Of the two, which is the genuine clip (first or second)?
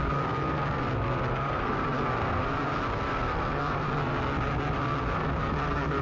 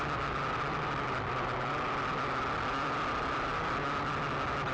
second